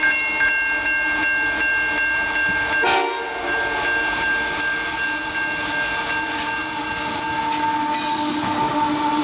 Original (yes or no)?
yes